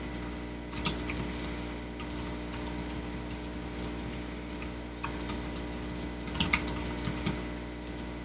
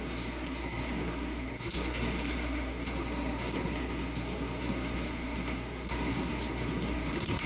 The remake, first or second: second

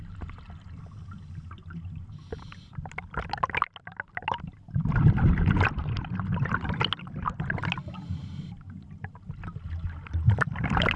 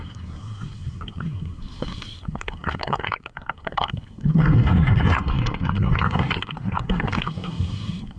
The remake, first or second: second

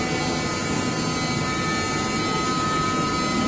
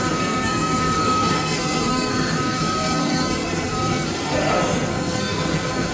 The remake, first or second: second